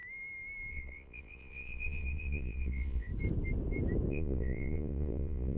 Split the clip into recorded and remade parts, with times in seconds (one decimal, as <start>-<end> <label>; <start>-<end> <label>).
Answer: 0.0-0.7 recorded; 0.7-3.1 remade; 3.1-4.1 recorded; 4.1-5.6 remade